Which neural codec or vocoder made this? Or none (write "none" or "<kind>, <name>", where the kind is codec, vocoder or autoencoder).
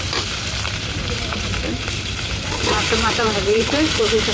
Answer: vocoder, BigVGAN v2